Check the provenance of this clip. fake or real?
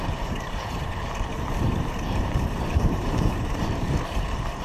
fake